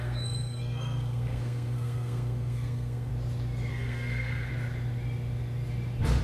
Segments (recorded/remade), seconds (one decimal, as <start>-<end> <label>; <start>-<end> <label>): 0.0-3.1 remade; 3.1-3.7 recorded; 3.7-4.5 remade; 4.5-6.2 recorded